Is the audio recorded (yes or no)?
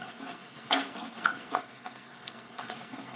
no